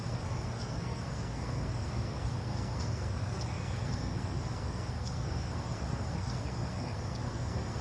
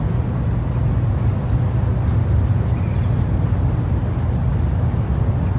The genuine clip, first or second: second